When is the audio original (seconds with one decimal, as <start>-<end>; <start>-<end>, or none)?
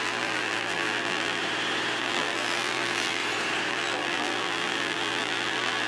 1.4-2.0; 3.2-3.7